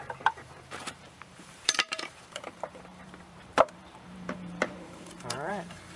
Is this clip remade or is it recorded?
remade